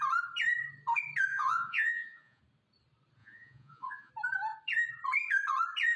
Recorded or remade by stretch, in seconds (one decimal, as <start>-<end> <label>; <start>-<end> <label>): 0.0-1.3 recorded; 1.3-2.4 remade; 2.4-3.2 recorded; 3.2-4.1 remade; 4.1-6.0 recorded